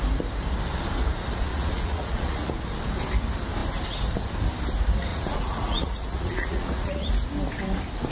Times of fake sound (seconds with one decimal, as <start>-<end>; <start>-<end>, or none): 1.5-2.5; 5.1-7.1